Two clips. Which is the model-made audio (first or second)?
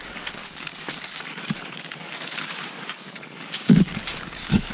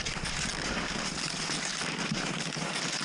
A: first